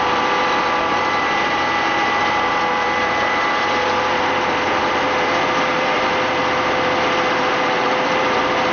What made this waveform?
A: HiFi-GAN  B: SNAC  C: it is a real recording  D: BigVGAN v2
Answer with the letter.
D